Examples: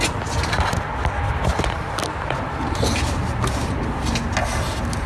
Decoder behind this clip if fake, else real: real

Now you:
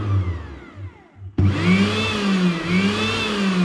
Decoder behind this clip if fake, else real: real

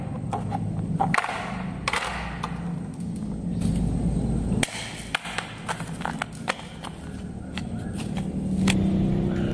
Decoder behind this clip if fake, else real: real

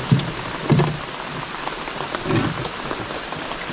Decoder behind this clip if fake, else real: real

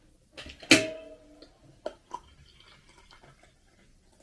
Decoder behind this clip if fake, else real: real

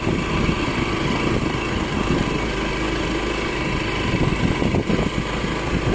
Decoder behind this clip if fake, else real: real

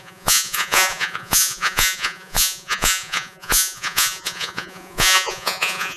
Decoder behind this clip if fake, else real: fake, vocoder, Vocos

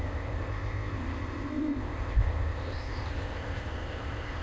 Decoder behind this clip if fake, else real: fake, codec, ZipCodec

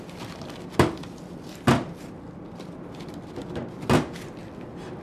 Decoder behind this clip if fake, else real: real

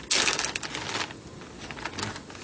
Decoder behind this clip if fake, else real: real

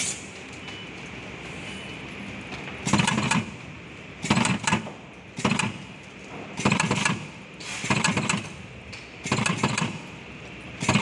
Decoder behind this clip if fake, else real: real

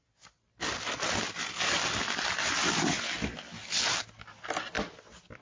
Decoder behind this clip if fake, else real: real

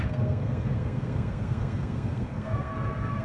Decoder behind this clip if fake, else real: fake, codec, SNAC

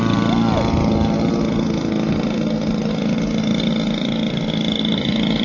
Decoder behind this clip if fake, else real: real